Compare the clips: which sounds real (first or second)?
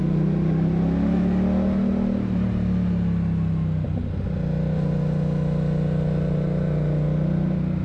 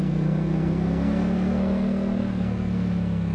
first